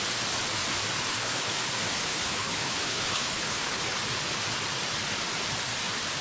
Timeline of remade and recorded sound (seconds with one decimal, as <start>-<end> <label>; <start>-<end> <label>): 0.0-1.2 recorded; 1.2-1.7 remade; 1.7-2.1 recorded; 2.1-3.8 remade; 3.8-6.2 recorded